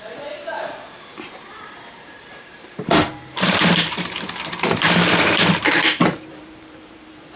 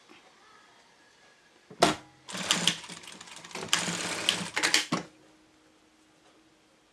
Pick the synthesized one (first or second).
first